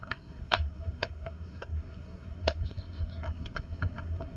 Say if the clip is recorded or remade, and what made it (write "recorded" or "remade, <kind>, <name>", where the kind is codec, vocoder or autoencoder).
remade, codec, SNAC